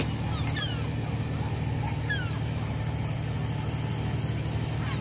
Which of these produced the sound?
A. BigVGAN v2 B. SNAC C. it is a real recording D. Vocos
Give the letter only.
C